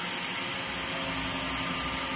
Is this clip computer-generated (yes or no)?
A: no